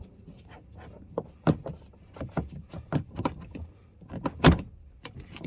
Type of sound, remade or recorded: remade